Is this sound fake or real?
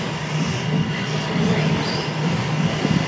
real